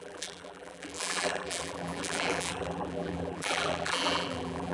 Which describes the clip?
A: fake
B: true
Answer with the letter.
A